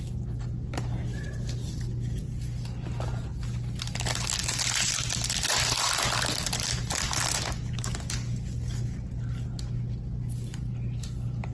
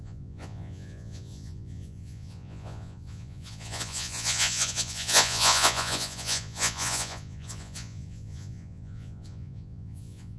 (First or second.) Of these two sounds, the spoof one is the second